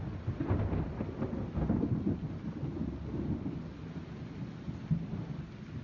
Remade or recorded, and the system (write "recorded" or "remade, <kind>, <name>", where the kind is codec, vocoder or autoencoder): recorded